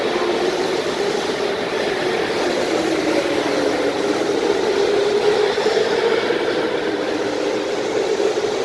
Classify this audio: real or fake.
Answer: real